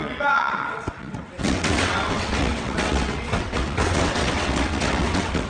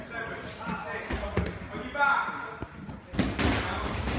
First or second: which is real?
second